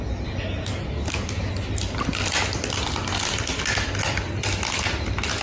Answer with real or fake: real